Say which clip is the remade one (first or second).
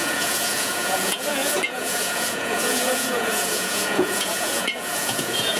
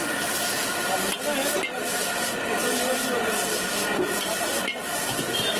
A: first